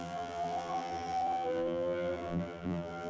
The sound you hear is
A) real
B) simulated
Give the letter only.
B